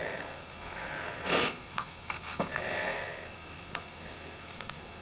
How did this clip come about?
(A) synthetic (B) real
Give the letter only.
A